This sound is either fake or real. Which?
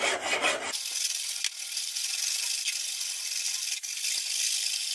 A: real